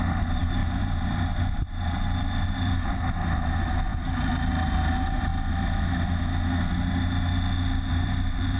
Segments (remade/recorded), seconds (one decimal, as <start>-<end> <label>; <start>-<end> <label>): 0.0-3.9 remade; 3.9-4.5 recorded; 4.5-5.3 remade; 5.3-7.9 recorded; 7.9-8.6 remade